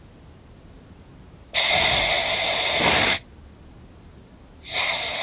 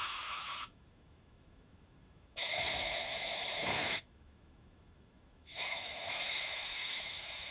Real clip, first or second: first